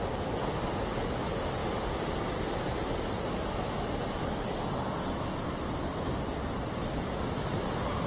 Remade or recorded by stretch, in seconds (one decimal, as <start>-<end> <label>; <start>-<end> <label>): 0.0-8.1 recorded